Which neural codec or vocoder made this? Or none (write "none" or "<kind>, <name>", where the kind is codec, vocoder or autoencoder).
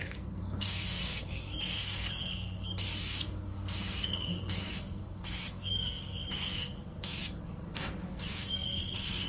codec, SNAC